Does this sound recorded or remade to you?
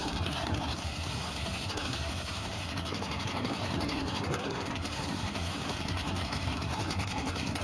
remade